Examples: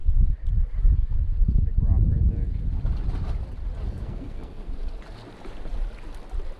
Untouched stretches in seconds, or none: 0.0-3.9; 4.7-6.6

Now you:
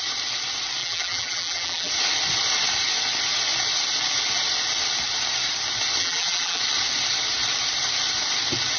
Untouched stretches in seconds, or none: 0.0-0.8; 1.9-6.0; 6.6-8.8

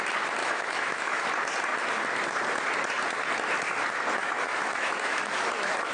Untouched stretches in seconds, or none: 0.0-0.4; 1.2-4.2

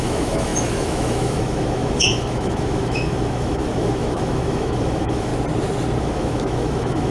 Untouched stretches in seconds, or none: 5.3-6.0

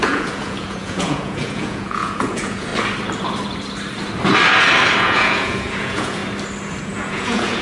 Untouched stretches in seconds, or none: 2.7-5.0; 6.2-6.8

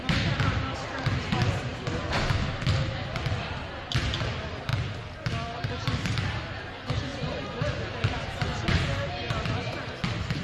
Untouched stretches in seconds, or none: 0.0-10.4

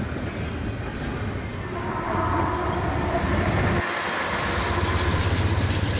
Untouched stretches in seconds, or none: 0.0-6.0